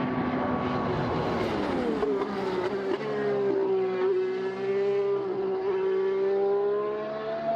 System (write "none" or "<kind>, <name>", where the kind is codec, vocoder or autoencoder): none